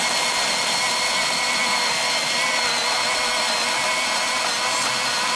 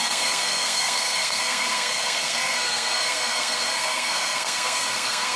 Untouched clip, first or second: first